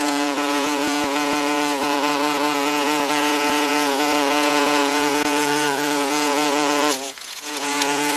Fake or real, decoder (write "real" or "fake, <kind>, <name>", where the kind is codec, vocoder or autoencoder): fake, vocoder, Vocos